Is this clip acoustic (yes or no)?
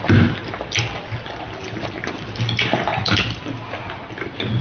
yes